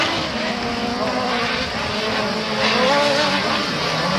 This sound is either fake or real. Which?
real